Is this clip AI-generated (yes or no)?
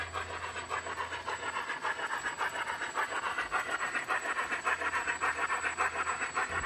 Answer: no